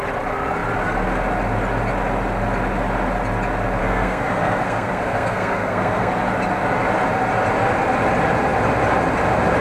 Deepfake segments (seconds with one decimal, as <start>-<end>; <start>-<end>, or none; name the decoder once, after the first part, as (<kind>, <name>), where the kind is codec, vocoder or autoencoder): 3.8-6.1 (codec, SNAC)